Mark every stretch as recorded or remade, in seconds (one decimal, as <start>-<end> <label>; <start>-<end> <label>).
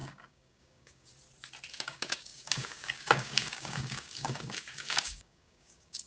0.0-1.1 remade; 1.1-1.7 recorded; 1.7-6.1 remade